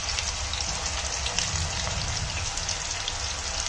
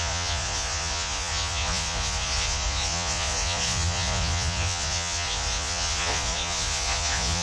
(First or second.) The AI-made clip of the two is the second